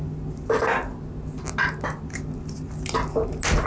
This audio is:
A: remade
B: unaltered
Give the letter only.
B